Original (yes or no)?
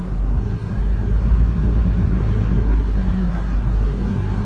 no